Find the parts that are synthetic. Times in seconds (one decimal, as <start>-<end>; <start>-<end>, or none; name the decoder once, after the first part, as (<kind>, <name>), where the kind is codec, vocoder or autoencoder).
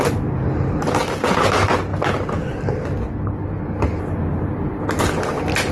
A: none